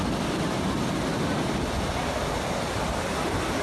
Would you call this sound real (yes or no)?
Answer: yes